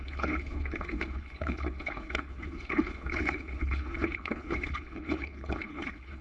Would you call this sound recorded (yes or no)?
no